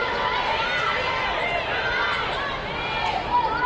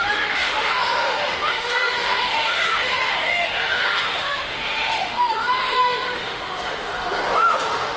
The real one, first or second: first